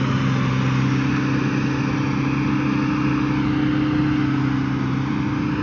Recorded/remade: recorded